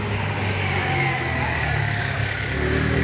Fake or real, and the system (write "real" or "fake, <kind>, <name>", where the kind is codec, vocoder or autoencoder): fake, codec, DAC